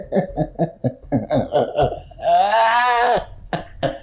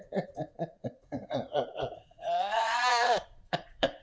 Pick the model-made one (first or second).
second